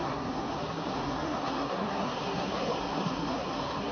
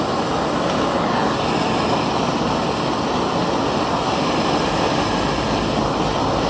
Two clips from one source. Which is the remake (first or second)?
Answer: first